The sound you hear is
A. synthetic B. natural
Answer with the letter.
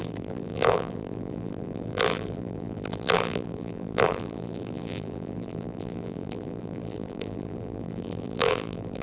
A